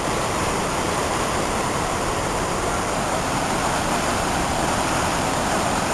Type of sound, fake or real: fake